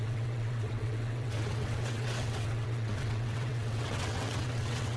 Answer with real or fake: fake